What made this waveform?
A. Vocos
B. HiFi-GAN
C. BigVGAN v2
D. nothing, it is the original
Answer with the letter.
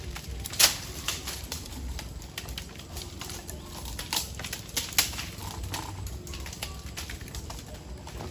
D